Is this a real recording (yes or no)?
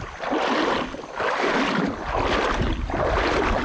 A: yes